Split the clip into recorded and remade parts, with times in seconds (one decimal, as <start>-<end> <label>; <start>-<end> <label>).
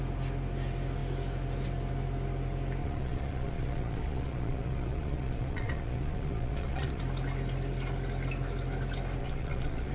0.0-2.8 recorded; 2.8-7.0 remade; 7.0-9.2 recorded; 9.2-9.9 remade